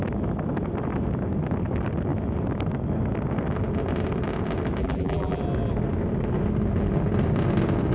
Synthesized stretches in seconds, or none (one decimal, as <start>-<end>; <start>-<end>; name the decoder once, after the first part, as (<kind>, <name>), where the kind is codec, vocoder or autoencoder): 4.8-5.4 (vocoder, BigVGAN v2)